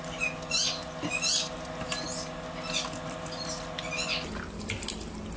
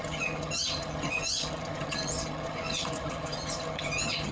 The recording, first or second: first